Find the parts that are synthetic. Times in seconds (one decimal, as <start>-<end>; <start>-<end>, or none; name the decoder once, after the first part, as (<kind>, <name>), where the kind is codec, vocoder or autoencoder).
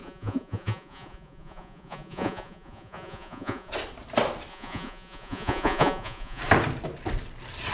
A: 0.0-3.7 (vocoder, Vocos); 4.5-6.4